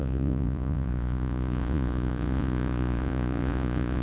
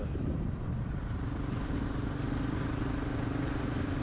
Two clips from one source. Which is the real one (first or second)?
second